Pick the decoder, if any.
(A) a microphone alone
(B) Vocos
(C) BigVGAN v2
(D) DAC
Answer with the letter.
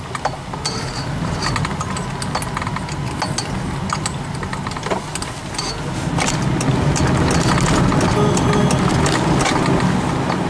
A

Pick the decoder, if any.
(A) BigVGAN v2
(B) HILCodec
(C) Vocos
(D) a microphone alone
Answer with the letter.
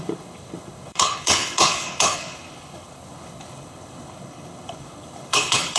B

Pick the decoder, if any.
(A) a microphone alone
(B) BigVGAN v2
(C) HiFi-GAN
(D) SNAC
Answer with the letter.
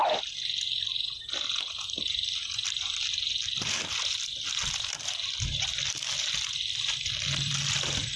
B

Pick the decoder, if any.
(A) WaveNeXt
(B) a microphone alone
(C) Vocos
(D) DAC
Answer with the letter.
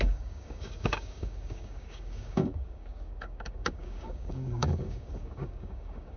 D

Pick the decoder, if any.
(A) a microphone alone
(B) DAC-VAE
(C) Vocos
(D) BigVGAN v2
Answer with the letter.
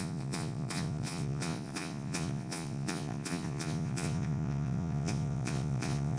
C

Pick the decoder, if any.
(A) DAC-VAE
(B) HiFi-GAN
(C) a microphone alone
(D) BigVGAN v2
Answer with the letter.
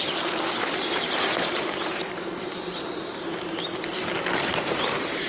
D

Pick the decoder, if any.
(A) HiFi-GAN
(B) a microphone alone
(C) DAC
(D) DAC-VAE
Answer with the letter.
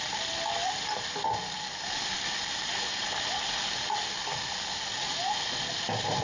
B